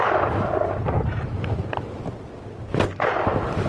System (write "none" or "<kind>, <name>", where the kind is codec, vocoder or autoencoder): none